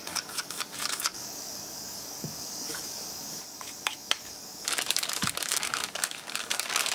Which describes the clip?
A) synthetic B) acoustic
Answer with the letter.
A